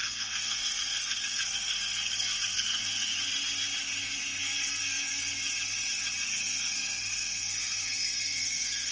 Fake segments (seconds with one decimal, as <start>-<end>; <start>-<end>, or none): 0.0-3.1; 4.4-5.3; 6.3-8.9